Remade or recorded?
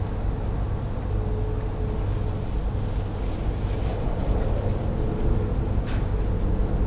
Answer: recorded